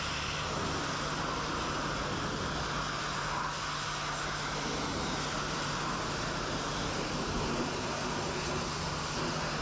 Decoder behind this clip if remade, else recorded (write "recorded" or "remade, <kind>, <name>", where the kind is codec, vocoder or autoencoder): recorded